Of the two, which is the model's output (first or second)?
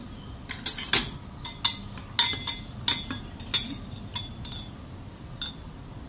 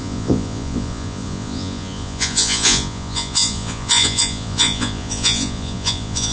second